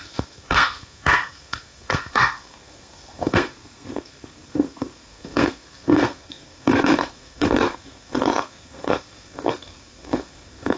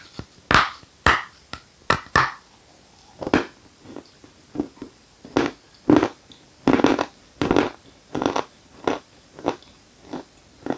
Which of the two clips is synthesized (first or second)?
first